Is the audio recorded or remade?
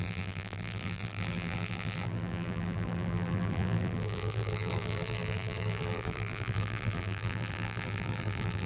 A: remade